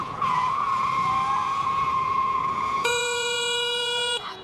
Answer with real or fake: fake